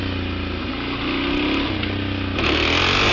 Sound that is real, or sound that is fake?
real